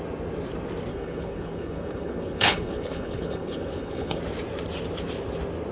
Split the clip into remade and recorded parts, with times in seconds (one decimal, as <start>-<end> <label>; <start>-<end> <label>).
0.0-0.9 recorded; 0.9-4.2 remade; 4.2-5.7 recorded